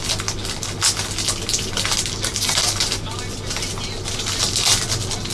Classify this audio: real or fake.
real